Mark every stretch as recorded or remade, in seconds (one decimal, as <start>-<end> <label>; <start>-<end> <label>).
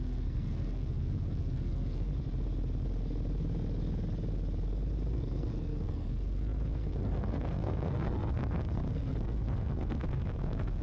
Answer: 0.0-2.1 remade; 2.1-5.1 recorded; 5.1-10.8 remade